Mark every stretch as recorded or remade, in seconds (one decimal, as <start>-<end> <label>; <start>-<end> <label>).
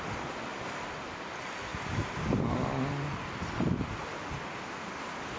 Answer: 0.0-5.4 recorded